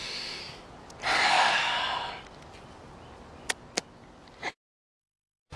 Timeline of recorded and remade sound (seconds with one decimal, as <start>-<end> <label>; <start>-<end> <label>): 0.0-0.4 remade; 0.4-1.3 recorded; 1.3-1.8 remade; 1.8-5.0 recorded; 5.0-5.6 remade